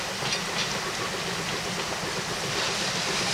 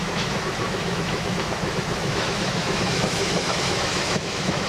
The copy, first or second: second